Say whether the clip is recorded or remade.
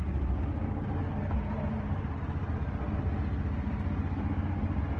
recorded